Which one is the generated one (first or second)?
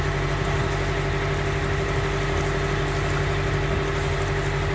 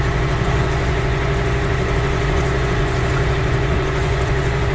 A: second